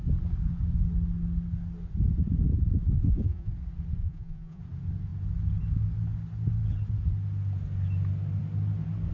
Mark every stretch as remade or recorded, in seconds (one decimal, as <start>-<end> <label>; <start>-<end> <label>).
0.0-3.0 recorded; 3.0-3.5 remade; 3.5-4.0 recorded; 4.0-4.6 remade; 4.6-9.1 recorded